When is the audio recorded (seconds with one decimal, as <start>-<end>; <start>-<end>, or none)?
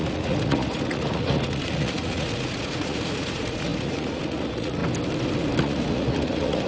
4.8-5.6